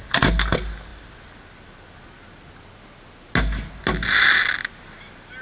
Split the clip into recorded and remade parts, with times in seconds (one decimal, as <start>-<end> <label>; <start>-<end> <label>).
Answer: 0.0-5.4 recorded